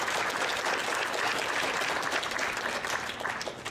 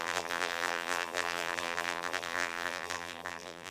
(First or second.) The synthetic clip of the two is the second